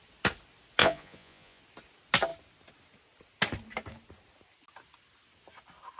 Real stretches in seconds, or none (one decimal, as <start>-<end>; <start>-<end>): 0.0-0.8; 1.6-6.0